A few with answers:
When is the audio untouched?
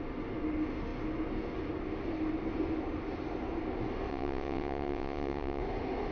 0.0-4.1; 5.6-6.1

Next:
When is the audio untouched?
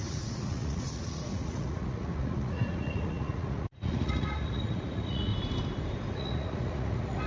5.3-6.1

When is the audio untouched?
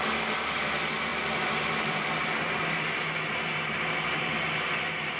0.0-5.2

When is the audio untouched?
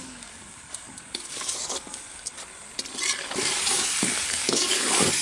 2.3-3.6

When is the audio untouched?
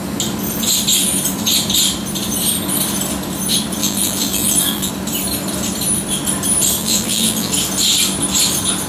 0.0-3.8; 4.9-6.8; 7.5-8.9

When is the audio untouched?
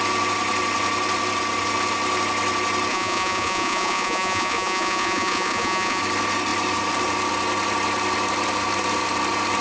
0.0-2.9; 6.0-9.6